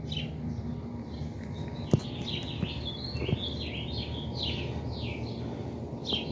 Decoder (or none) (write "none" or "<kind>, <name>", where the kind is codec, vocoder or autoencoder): none